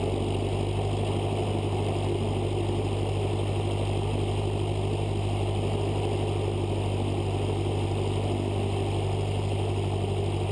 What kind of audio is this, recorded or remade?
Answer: recorded